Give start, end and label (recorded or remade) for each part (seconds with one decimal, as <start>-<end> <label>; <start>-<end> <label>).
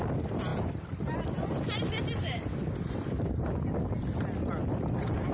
0.0-5.3 recorded